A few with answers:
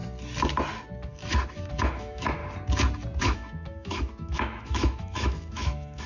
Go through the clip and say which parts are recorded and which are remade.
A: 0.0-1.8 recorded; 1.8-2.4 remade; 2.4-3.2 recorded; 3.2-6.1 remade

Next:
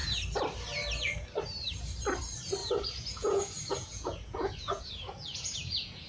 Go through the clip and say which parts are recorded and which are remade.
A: 0.0-2.6 recorded; 2.6-6.1 remade